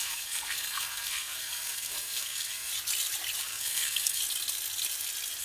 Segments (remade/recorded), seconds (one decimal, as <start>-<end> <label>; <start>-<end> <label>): 0.0-2.7 remade; 2.7-3.4 recorded; 3.4-4.2 remade; 4.2-5.4 recorded